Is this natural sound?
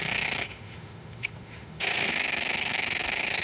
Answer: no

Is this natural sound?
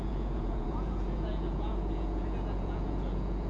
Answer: no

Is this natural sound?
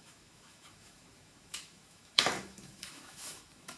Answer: no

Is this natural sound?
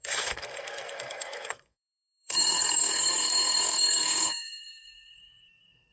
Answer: no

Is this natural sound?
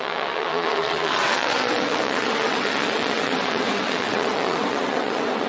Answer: no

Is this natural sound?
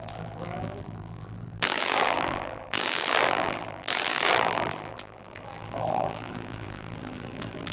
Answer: no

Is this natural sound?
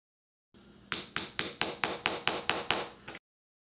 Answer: yes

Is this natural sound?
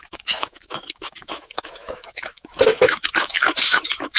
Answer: no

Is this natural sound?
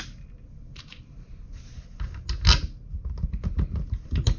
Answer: yes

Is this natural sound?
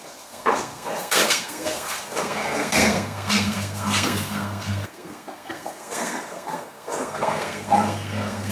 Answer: no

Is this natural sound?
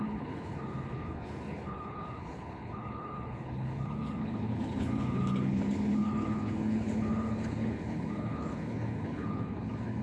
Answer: no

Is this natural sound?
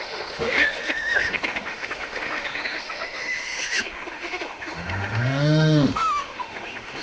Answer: no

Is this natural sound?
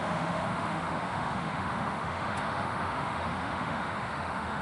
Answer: no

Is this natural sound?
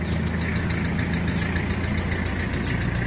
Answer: yes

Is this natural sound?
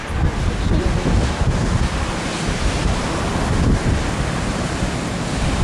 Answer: yes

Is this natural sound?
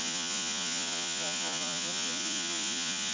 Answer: no